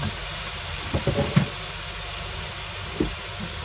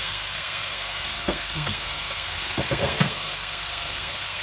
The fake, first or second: second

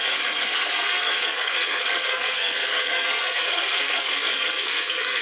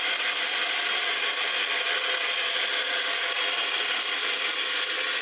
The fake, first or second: first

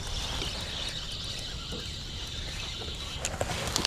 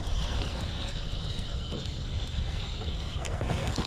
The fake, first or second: second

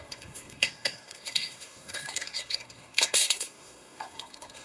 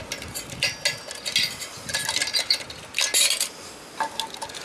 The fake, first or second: first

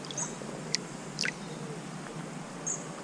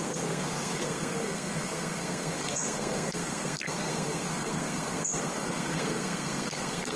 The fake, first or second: second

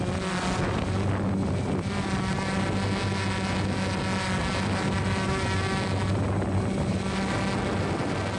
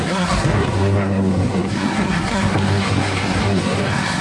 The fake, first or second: second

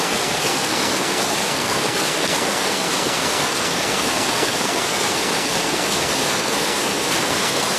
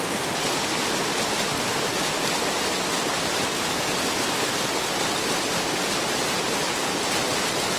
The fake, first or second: first